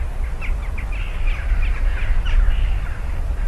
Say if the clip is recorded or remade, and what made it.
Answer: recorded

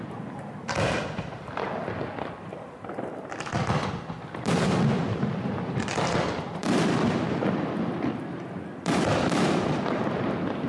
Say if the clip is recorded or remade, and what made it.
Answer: remade, vocoder, BigVGAN v2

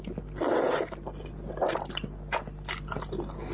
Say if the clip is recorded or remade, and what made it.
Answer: recorded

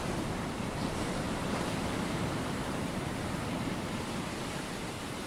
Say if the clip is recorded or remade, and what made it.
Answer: remade, vocoder, BigVGAN v2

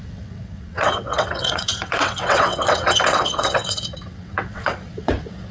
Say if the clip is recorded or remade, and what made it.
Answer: remade, vocoder, WaveNeXt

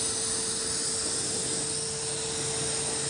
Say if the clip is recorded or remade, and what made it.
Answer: recorded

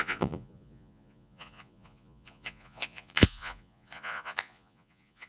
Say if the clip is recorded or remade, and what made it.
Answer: remade, vocoder, Vocos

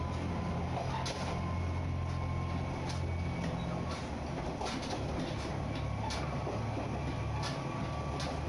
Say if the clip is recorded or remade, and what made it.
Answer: recorded